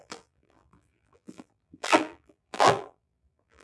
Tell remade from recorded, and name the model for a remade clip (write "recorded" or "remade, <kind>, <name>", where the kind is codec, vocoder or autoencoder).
remade, vocoder, BigVGAN v2